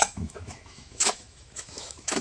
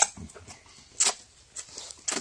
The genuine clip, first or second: second